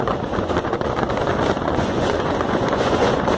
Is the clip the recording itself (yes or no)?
no